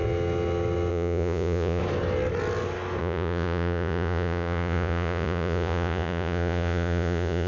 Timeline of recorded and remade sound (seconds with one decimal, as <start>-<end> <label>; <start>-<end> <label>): 0.0-0.9 recorded; 0.9-1.8 remade; 1.8-3.0 recorded; 3.0-7.5 remade